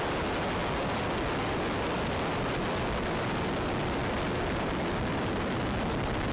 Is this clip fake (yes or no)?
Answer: no